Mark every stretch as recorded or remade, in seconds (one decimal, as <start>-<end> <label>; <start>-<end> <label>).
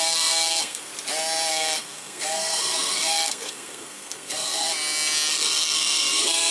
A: 0.0-0.9 remade; 0.9-1.5 recorded; 1.5-4.7 remade; 4.7-5.3 recorded; 5.3-6.5 remade